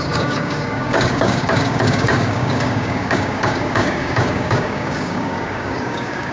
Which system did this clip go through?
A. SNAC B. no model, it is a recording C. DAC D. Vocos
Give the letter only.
C